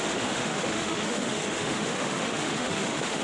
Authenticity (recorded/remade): remade